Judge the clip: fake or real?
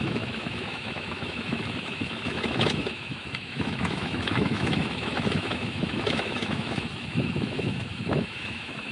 fake